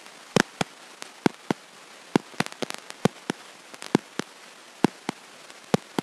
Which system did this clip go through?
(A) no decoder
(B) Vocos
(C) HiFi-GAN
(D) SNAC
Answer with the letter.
A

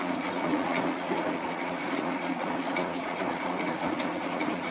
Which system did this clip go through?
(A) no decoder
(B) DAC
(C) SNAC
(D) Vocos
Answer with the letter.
D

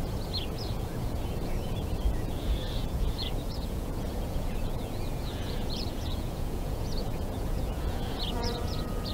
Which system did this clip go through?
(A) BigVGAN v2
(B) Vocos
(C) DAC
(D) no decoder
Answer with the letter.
B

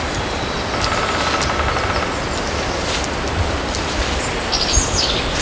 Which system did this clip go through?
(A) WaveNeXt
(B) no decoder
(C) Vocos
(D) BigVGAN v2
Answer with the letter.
B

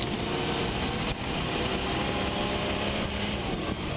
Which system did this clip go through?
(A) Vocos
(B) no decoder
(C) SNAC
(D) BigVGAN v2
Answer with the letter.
B